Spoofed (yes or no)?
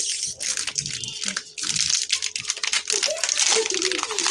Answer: no